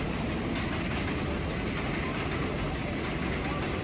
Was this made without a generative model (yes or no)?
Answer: yes